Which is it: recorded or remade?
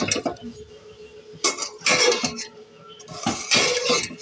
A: recorded